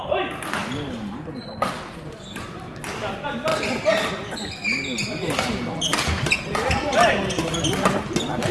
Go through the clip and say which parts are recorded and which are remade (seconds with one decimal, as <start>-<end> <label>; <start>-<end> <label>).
0.0-5.9 recorded; 5.9-6.5 remade; 6.5-8.5 recorded

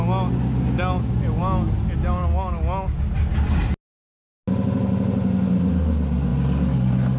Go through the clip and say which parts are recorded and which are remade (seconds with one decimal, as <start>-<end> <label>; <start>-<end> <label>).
0.0-7.2 recorded

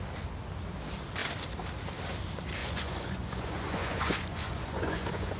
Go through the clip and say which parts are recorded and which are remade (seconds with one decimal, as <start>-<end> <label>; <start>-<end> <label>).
0.0-2.6 recorded; 2.6-5.4 remade

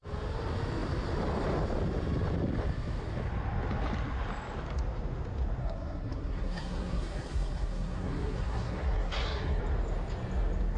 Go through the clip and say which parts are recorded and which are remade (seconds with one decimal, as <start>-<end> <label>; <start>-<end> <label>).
0.0-5.6 recorded; 5.6-9.6 remade; 9.6-10.8 recorded

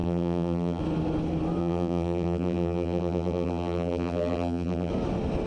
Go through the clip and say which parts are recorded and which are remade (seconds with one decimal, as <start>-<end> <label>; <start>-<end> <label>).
0.0-0.8 remade; 0.8-1.6 recorded; 1.6-4.9 remade; 4.9-5.5 recorded

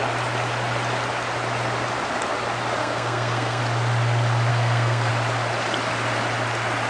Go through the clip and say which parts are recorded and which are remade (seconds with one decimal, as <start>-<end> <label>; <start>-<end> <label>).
0.0-2.8 recorded; 2.8-3.6 remade; 3.6-4.5 recorded; 4.5-5.1 remade; 5.1-6.9 recorded

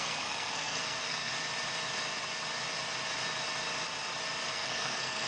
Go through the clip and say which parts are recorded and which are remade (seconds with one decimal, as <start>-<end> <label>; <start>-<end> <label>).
0.0-1.3 remade; 1.3-4.5 recorded; 4.5-5.3 remade

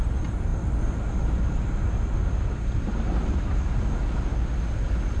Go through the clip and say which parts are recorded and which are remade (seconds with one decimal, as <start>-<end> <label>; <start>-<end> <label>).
0.0-5.2 recorded